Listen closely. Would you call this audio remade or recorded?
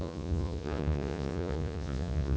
remade